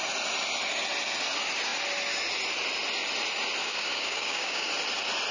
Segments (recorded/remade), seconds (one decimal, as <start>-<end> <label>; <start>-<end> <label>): 0.0-3.6 recorded; 3.6-4.7 remade; 4.7-5.3 recorded